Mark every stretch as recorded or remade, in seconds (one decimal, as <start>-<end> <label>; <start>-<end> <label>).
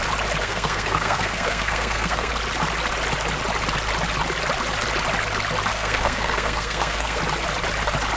0.0-0.4 recorded; 0.4-2.3 remade; 2.3-5.7 recorded; 5.7-7.2 remade; 7.2-8.2 recorded